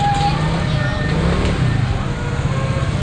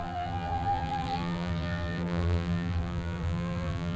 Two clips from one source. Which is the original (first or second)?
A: first